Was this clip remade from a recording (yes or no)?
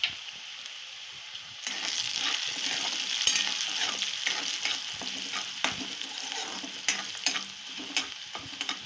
no